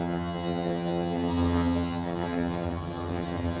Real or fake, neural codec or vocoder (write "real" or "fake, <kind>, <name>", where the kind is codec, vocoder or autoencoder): fake, vocoder, HiFi-GAN